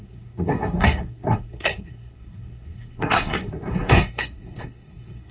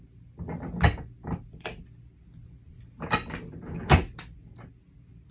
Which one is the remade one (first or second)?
first